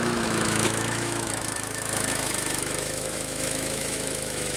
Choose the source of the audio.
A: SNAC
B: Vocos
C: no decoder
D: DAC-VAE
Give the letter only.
D